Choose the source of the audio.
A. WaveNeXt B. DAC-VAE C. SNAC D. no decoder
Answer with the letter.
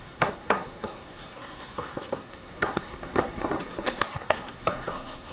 C